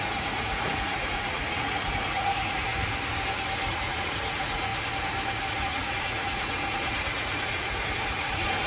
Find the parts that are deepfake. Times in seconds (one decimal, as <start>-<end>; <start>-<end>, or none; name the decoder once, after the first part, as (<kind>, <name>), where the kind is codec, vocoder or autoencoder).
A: 0.0-2.7 (vocoder, Vocos); 3.7-4.7; 5.5-8.7